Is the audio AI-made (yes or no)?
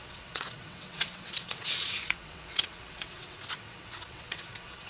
yes